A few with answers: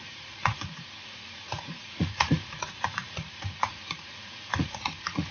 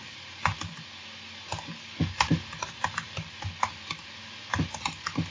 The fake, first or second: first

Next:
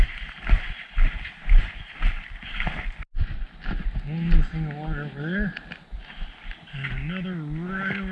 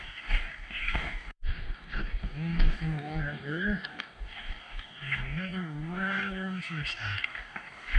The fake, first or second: second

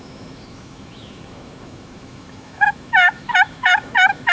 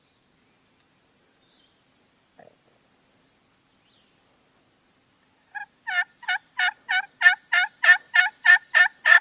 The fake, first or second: first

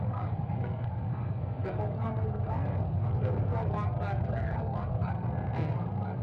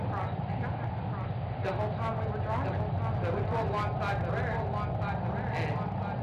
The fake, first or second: first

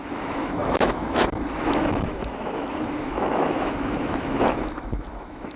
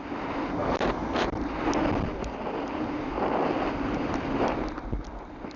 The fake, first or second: first